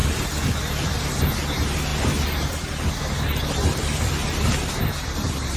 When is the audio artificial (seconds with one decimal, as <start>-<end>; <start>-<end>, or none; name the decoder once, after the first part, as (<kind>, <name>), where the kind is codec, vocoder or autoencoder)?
none